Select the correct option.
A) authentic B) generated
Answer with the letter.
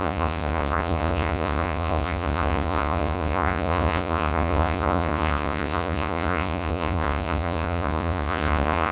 B